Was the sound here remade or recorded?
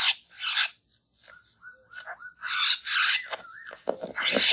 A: recorded